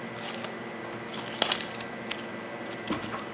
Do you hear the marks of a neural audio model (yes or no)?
no